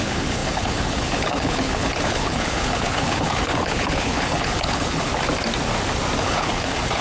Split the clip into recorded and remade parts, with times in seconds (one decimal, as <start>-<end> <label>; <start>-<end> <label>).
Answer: 0.0-5.1 remade; 5.1-6.2 recorded; 6.2-7.0 remade